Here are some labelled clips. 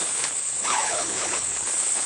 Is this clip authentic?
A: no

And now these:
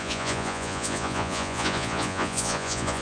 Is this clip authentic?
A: no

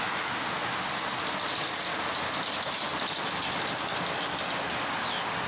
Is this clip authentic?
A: yes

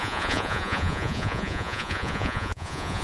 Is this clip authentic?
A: no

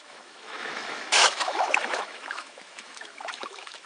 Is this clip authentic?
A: no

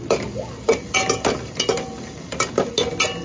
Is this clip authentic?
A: yes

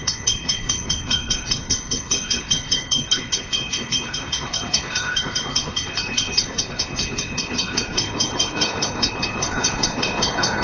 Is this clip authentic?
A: no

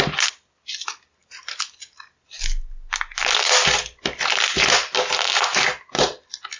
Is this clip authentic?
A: yes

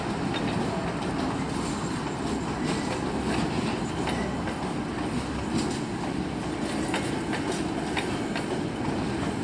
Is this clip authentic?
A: yes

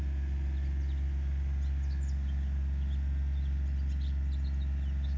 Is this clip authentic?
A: yes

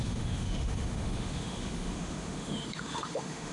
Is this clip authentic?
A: no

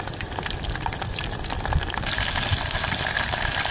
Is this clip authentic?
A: yes